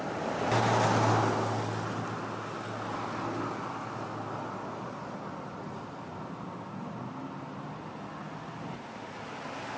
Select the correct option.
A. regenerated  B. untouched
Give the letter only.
B